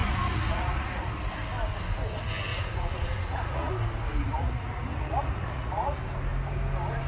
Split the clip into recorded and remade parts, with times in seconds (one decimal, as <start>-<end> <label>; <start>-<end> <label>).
0.0-1.2 remade; 1.2-2.5 recorded; 2.5-3.7 remade; 3.7-4.2 recorded; 4.2-6.0 remade; 6.0-7.1 recorded